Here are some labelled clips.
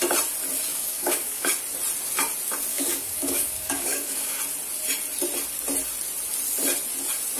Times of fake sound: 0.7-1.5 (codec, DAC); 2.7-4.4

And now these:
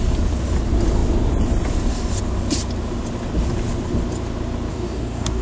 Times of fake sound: 4.7-5.4 (codec, DAC)

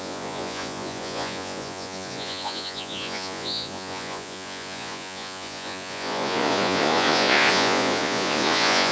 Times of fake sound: 0.0-8.9 (vocoder, Vocos)

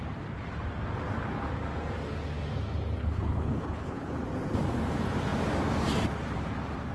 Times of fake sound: 3.0-4.1 (codec, HILCodec)

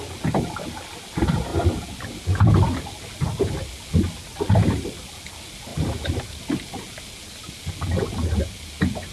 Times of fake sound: none